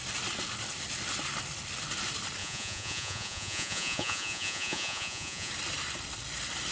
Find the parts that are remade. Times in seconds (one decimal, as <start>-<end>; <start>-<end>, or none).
2.4-5.5